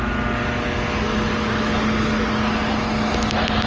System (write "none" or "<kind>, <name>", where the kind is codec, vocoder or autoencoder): none